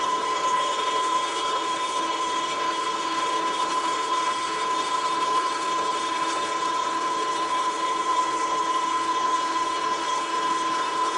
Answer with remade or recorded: remade